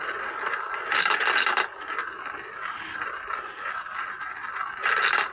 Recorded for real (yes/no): yes